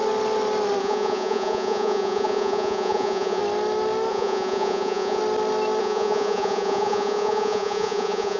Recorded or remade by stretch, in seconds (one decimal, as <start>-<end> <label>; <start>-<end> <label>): 0.0-0.8 recorded; 0.8-3.4 remade; 3.4-4.1 recorded; 4.1-5.2 remade; 5.2-5.8 recorded; 5.8-8.4 remade